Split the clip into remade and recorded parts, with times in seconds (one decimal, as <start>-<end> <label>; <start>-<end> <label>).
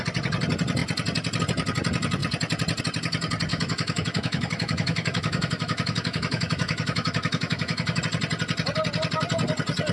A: 0.0-3.5 recorded; 3.5-8.0 remade; 8.0-9.9 recorded